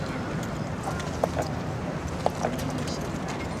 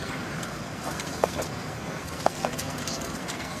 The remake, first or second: second